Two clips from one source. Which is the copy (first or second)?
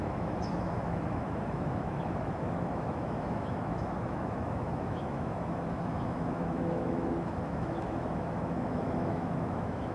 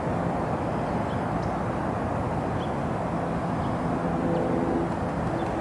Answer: first